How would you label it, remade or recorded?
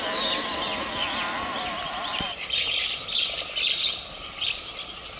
recorded